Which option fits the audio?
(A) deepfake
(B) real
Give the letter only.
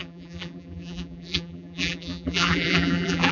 A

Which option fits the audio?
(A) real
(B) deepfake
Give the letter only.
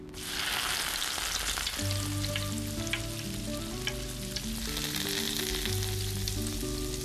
A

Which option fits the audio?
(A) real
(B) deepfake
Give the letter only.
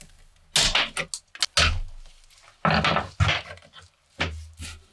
A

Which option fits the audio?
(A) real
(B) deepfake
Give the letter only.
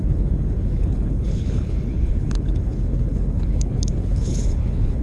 B